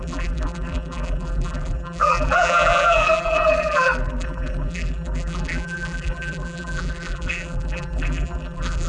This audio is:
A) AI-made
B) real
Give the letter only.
A